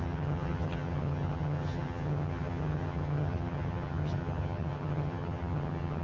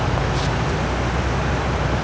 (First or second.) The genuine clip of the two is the second